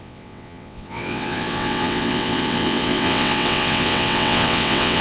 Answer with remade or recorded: remade